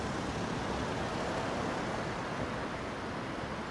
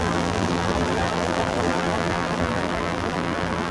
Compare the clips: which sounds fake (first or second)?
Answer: second